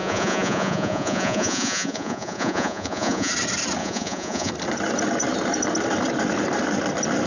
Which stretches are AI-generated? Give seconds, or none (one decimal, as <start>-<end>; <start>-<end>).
0.0-3.3; 3.8-4.5